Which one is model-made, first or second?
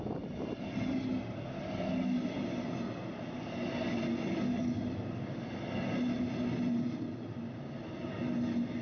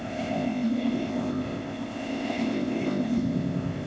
second